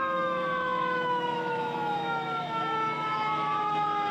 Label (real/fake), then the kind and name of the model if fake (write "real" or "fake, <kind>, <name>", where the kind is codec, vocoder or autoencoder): fake, autoencoder, DAC-VAE